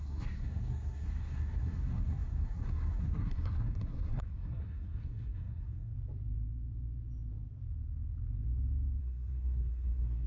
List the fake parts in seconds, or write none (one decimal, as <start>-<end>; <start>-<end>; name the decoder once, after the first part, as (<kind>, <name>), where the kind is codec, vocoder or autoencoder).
0.0-5.9 (codec, SNAC); 9.0-10.3